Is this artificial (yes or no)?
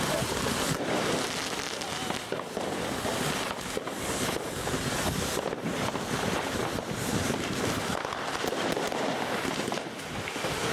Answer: no